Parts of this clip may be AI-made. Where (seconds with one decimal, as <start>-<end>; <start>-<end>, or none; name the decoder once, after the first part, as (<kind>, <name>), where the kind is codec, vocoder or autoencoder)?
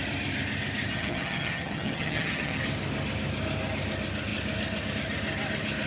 0.9-2.6 (vocoder, HiFi-GAN)